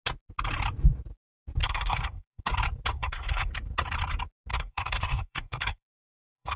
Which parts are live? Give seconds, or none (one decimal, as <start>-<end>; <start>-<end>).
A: 0.0-1.6; 2.4-2.9; 3.5-4.5